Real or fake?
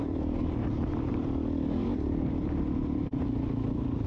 fake